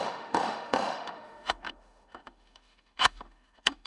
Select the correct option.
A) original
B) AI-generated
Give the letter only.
B